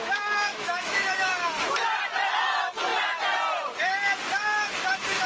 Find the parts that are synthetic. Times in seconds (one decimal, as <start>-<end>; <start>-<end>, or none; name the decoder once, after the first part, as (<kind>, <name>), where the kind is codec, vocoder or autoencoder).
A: 0.5-1.3 (autoencoder, DAC-VAE)